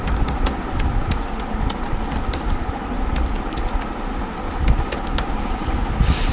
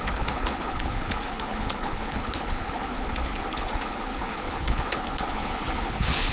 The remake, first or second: second